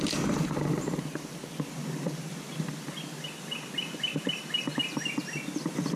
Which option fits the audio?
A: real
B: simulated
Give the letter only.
A